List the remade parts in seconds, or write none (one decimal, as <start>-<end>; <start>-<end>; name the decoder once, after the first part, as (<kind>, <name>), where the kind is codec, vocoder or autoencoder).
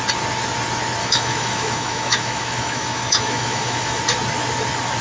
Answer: 1.0-4.0 (autoencoder, DAC-VAE)